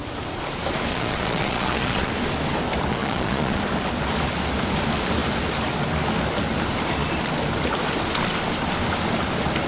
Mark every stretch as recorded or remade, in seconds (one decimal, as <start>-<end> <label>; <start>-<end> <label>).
0.0-0.9 recorded; 0.9-2.1 remade; 2.1-2.9 recorded; 2.9-3.6 remade; 3.6-9.7 recorded